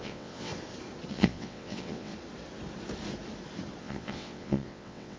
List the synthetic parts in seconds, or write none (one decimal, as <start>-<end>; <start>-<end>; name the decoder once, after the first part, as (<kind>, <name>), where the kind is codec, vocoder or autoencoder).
0.0-0.5 (vocoder, WaveNeXt); 1.1-2.1; 3.8-5.2